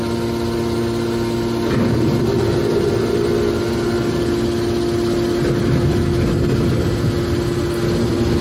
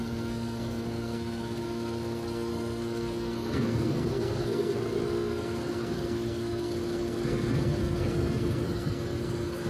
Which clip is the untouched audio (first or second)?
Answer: first